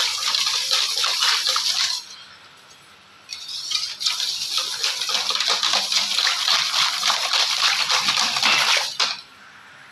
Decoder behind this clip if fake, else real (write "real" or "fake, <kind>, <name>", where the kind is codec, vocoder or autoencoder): real